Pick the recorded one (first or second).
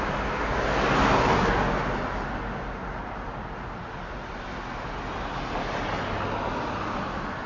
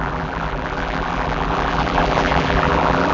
first